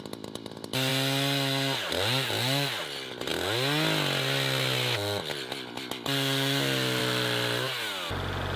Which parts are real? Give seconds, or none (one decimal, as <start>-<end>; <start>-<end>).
0.0-8.6